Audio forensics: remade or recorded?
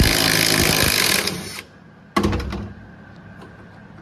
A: recorded